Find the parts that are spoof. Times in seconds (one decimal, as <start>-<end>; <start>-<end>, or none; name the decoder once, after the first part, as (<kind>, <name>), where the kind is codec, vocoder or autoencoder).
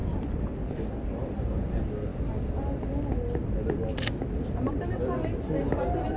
none